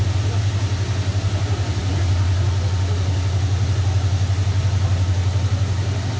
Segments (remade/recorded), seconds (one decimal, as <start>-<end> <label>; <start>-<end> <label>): 0.0-6.2 recorded